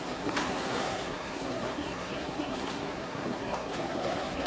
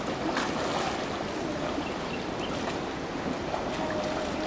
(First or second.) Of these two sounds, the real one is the second